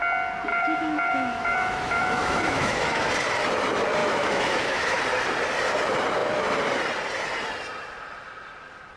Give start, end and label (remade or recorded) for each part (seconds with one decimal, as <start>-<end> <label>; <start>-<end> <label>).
0.0-0.5 recorded; 0.5-3.1 remade; 3.1-4.0 recorded; 4.0-5.0 remade; 5.0-9.0 recorded

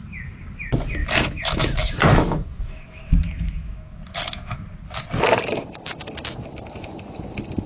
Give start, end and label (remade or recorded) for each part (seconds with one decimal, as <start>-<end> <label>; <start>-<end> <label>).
0.0-1.0 recorded; 1.0-4.6 remade; 4.6-7.7 recorded

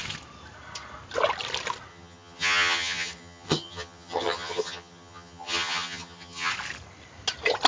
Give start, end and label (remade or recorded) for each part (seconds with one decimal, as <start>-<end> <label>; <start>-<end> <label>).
0.0-1.9 recorded; 1.9-6.5 remade; 6.5-7.7 recorded

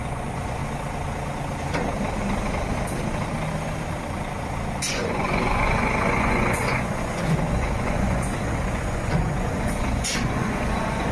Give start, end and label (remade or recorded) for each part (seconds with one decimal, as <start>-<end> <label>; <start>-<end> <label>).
0.0-0.6 remade; 0.6-4.9 recorded; 4.9-11.1 remade